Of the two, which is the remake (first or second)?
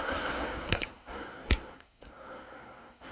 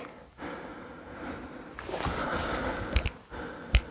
first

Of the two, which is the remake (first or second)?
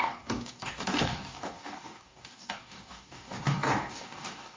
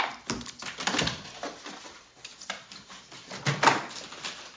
first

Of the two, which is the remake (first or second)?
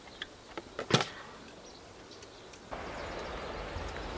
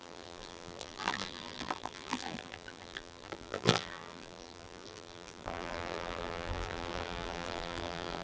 second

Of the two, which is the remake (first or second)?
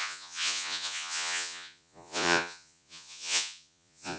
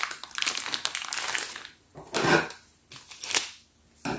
first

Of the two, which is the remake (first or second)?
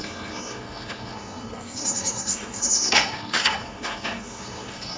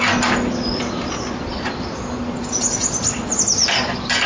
first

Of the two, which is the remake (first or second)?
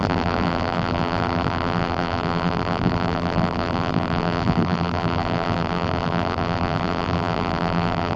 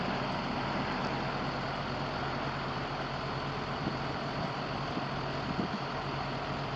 first